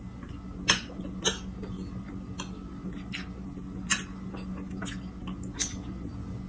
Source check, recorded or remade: recorded